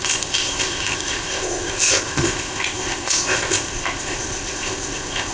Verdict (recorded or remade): remade